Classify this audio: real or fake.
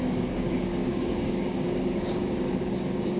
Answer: fake